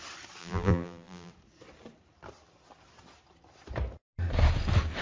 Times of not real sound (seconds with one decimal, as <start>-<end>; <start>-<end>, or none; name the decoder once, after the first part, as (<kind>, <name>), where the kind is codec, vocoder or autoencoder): 0.4-1.3 (vocoder, BigVGAN v2)